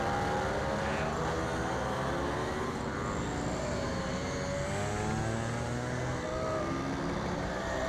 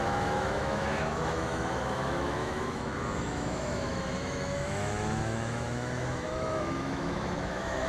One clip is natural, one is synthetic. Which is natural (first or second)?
first